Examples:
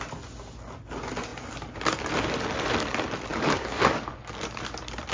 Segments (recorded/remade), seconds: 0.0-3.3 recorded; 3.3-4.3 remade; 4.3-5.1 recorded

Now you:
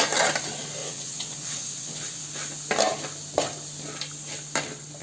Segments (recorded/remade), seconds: 0.0-0.8 recorded; 0.8-2.2 remade; 2.2-5.0 recorded

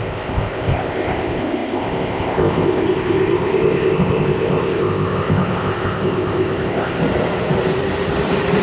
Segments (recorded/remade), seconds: 0.0-7.0 remade; 7.0-8.6 recorded

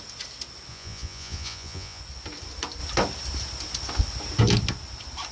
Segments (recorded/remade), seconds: 0.0-0.7 recorded; 0.7-2.0 remade; 2.0-5.3 recorded

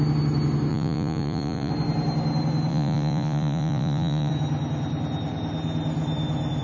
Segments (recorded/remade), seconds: 0.0-0.7 recorded; 0.7-1.7 remade; 1.7-2.7 recorded; 2.7-4.3 remade; 4.3-6.6 recorded